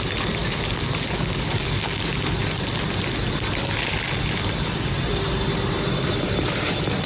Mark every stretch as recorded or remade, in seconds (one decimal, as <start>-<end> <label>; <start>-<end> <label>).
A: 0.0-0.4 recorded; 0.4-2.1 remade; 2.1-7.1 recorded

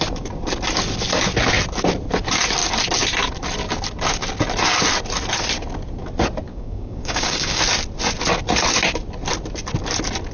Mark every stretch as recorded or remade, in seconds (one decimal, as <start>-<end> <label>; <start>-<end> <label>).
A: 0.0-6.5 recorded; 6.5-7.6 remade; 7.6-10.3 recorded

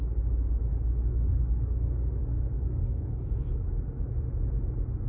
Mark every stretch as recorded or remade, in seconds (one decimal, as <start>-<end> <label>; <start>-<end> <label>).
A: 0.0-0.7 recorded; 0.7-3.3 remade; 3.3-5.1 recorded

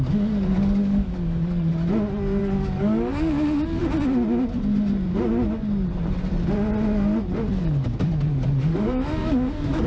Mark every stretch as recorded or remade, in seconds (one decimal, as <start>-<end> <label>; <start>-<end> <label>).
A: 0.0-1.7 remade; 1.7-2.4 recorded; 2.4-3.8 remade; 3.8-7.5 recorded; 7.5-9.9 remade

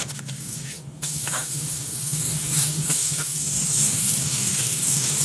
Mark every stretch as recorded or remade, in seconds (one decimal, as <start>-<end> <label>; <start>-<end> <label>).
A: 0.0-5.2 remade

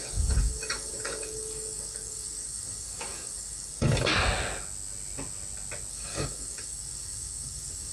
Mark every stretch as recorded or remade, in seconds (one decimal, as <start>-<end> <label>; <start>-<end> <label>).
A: 0.0-4.1 remade; 4.1-5.9 recorded; 5.9-7.9 remade

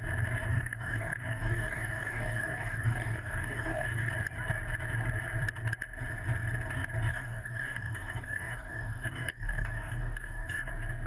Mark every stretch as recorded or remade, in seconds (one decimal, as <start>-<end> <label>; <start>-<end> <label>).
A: 0.0-0.5 recorded; 0.5-4.1 remade; 4.1-7.1 recorded; 7.1-10.7 remade; 10.7-11.1 recorded

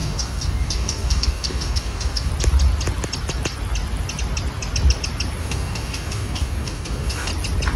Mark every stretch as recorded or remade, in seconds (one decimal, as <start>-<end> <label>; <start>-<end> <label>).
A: 0.0-2.3 remade; 2.3-5.4 recorded; 5.4-7.3 remade; 7.3-7.8 recorded